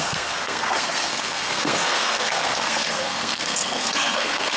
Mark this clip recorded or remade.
remade